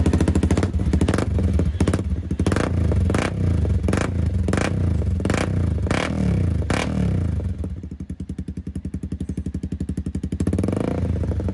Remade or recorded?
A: recorded